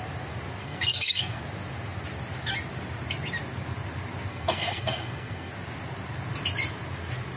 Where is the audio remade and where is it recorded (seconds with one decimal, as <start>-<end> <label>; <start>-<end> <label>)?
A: 0.0-0.6 recorded; 0.6-1.4 remade; 1.4-4.3 recorded; 4.3-5.5 remade; 5.5-7.4 recorded